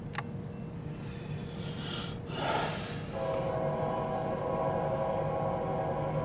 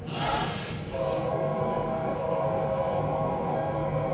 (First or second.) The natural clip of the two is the first